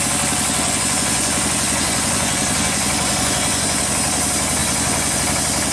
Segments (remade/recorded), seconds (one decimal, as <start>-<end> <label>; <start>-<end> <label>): 0.0-0.5 recorded; 0.5-3.8 remade; 3.8-4.6 recorded; 4.6-5.2 remade; 5.2-5.7 recorded